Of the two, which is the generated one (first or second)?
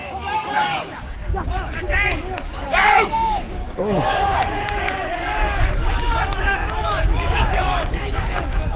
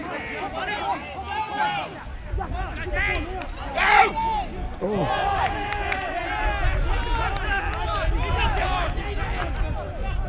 first